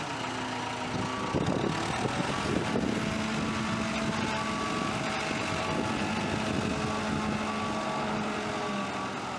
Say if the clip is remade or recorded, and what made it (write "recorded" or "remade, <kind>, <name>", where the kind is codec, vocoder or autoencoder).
recorded